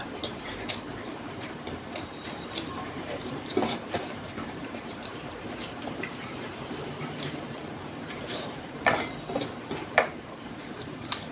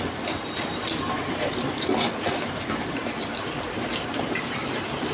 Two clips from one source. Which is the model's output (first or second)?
first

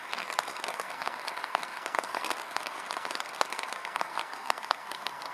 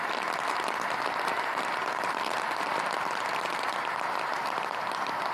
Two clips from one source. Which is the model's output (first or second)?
first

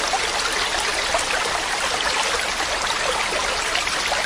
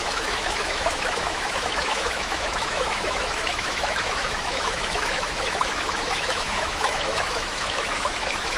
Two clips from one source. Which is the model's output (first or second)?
second